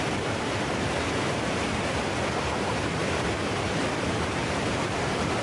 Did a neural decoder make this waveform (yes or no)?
yes